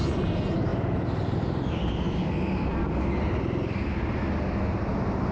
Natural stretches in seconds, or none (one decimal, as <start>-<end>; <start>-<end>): 0.0-5.3